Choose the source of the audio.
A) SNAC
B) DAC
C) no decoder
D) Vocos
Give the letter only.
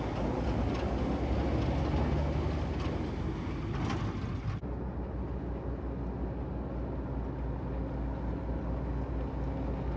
C